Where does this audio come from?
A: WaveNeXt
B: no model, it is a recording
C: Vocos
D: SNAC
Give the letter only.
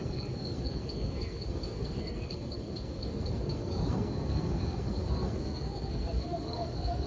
D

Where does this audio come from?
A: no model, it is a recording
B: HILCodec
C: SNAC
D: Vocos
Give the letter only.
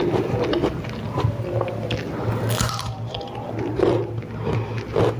A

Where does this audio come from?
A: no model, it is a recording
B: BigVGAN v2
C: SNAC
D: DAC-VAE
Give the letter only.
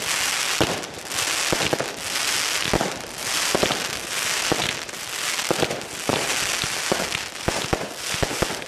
A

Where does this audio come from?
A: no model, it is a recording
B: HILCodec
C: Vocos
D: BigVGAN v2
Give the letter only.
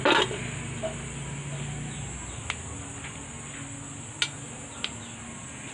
A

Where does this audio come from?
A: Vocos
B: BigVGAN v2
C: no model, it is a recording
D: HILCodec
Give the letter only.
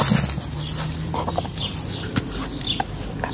C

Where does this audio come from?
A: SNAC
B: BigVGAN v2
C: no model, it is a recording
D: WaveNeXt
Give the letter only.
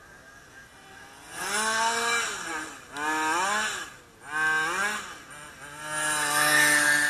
C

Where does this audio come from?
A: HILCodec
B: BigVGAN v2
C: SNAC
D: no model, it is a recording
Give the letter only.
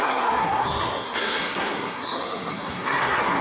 C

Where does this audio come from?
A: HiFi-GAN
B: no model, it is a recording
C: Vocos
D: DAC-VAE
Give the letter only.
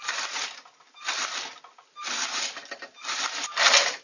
B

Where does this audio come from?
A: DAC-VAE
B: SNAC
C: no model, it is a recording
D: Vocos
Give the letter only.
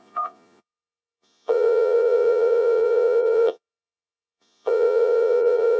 D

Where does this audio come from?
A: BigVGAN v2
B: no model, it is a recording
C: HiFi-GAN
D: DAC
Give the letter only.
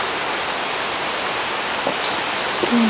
B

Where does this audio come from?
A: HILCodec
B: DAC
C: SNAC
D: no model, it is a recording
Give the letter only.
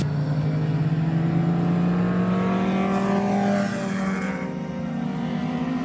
D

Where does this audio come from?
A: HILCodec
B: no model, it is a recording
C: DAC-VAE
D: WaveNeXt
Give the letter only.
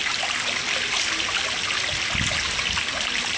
B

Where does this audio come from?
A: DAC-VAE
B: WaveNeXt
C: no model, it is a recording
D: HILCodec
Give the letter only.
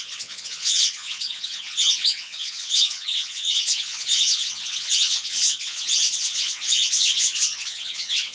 B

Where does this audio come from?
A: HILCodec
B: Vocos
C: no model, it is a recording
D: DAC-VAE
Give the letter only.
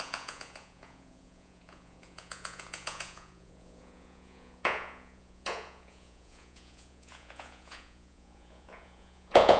B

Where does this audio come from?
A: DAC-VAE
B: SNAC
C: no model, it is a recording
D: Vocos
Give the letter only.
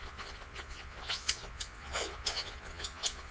D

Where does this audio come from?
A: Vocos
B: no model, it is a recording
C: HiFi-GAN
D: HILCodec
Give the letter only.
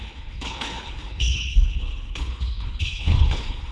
D